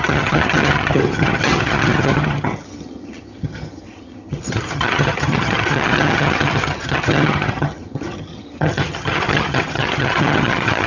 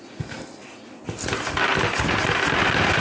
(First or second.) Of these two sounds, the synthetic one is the first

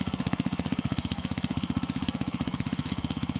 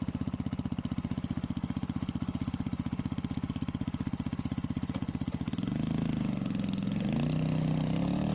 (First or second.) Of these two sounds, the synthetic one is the first